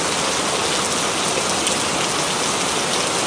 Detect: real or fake real